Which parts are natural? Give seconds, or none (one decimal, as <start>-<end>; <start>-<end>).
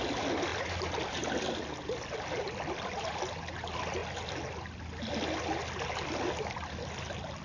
0.0-7.4